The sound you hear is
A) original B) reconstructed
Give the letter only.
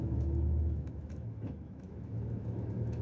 B